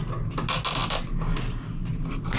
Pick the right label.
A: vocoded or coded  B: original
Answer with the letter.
B